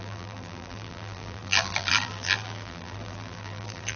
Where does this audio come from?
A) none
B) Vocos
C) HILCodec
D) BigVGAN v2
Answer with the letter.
D